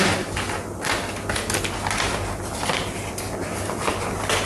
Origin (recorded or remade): recorded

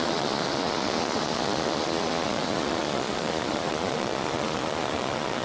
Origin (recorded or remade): remade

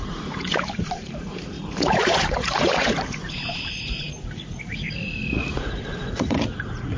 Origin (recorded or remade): remade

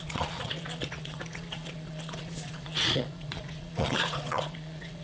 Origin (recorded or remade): remade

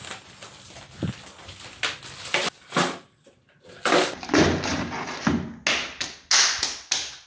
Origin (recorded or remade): recorded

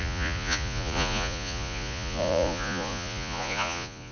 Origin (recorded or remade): remade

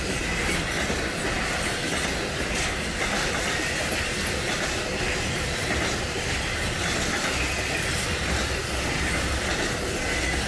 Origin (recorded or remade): recorded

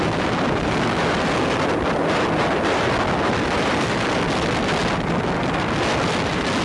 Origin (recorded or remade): recorded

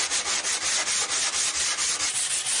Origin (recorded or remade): recorded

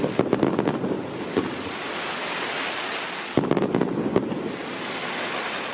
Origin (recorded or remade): recorded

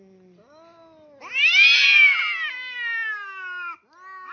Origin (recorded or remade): recorded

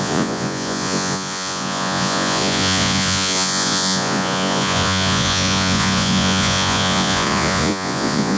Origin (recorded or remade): remade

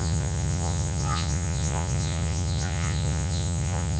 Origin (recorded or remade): remade